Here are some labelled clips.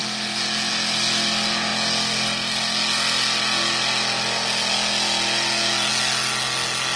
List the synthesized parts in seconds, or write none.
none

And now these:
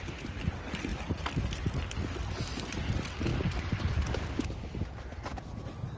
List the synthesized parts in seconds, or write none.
none

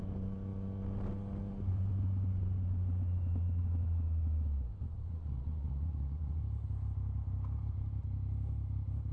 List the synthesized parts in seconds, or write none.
5.1-6.4 (vocoder, Vocos)

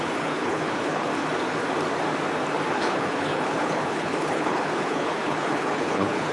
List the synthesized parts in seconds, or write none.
0.0-1.1 (codec, HILCodec); 2.7-6.3

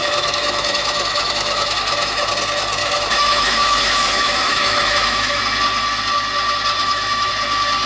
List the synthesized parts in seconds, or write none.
0.0-2.3 (autoencoder, DAC-VAE); 2.8-5.4; 6.8-7.3

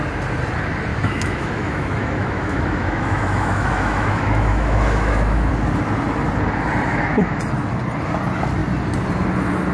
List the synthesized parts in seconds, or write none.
0.9-5.5 (autoencoder, DAC-VAE); 6.9-7.4

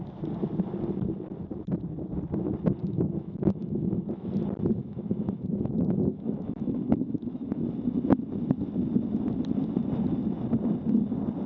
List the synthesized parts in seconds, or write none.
2.8-4.3 (autoencoder, DAC-VAE); 4.8-7.6

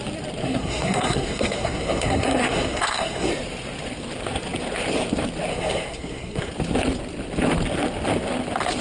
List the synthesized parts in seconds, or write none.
0.4-3.3 (codec, SNAC); 5.5-6.5